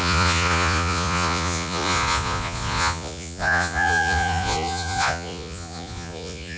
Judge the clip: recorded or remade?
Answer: remade